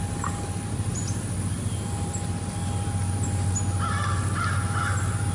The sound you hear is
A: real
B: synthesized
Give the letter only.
A